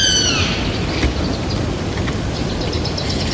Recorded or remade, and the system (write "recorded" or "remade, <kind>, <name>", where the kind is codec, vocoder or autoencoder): recorded